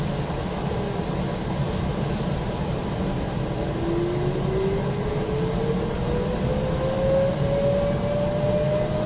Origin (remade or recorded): recorded